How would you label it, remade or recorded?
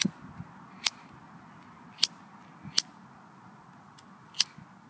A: recorded